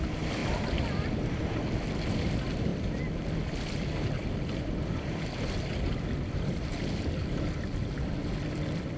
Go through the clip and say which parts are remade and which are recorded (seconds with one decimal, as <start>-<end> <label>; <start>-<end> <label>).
0.0-9.0 recorded